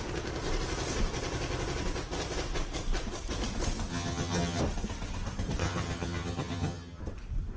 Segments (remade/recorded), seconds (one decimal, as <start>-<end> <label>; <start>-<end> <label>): 0.0-3.9 recorded; 3.9-4.6 remade; 4.6-5.6 recorded; 5.6-7.0 remade; 7.0-7.6 recorded